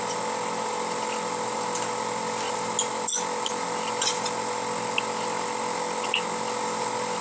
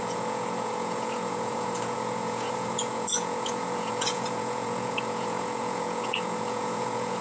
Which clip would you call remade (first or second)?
second